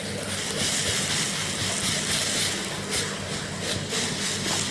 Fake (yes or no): no